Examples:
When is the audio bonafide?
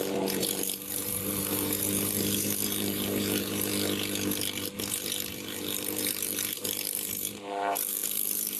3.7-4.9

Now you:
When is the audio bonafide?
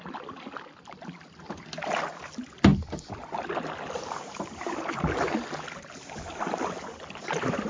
0.0-7.7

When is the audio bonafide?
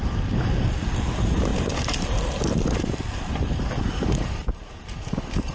0.0-1.1; 1.5-3.6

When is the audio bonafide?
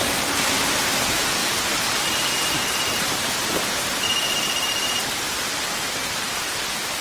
none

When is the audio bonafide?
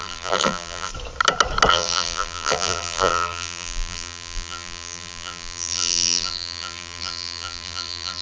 0.9-1.7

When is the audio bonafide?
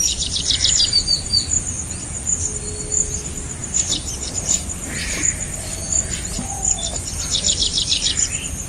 0.0-8.7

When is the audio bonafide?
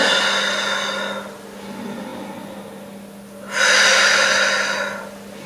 0.0-5.5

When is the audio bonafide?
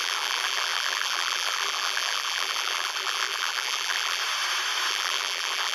4.2-4.9